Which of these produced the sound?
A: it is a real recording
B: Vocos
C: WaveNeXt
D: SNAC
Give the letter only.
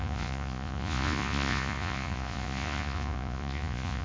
B